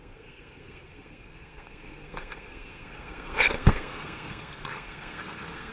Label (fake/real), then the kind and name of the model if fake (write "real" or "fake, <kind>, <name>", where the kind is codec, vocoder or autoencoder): fake, codec, SNAC